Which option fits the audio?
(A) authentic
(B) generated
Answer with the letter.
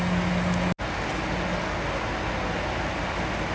A